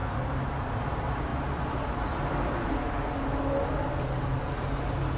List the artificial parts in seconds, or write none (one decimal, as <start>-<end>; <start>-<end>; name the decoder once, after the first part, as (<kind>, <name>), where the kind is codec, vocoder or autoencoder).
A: none